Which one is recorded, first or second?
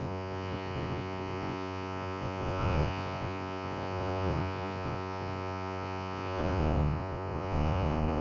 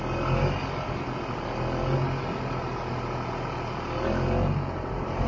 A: second